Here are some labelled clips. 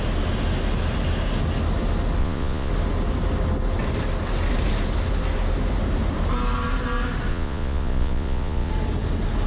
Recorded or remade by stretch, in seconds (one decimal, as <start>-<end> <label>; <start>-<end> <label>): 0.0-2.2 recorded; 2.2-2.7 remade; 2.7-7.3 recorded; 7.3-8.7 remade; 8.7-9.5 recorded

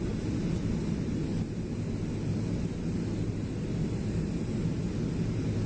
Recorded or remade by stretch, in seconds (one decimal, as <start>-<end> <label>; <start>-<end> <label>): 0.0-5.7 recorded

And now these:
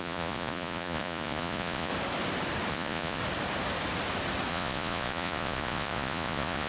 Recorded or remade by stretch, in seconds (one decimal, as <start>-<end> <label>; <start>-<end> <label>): 0.0-1.9 remade; 1.9-2.7 recorded; 2.7-3.2 remade; 3.2-4.5 recorded; 4.5-6.7 remade

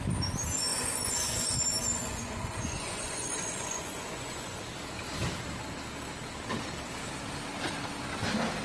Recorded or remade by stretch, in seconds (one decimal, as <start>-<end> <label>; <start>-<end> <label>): 0.0-0.7 recorded; 0.7-1.5 remade; 1.5-2.0 recorded; 2.0-4.6 remade; 4.6-8.6 recorded

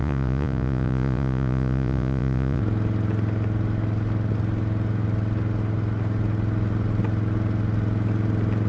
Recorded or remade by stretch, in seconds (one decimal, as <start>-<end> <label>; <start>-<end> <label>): 0.0-2.6 remade; 2.6-8.7 recorded